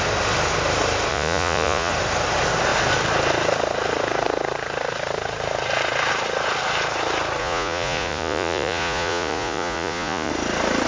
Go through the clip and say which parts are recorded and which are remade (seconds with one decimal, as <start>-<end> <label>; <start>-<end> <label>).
0.0-1.1 recorded; 1.1-1.9 remade; 1.9-7.4 recorded; 7.4-10.3 remade; 10.3-10.9 recorded